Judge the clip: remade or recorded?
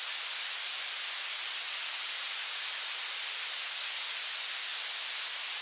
recorded